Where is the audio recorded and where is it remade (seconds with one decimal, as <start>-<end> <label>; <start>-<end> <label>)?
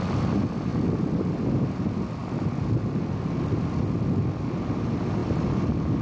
0.0-6.0 recorded